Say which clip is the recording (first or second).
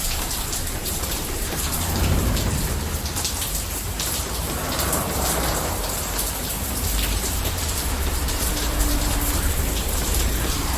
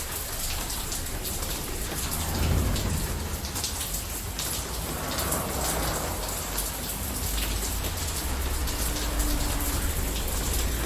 second